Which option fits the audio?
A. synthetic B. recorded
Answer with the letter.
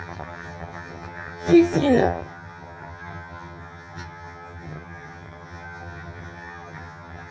A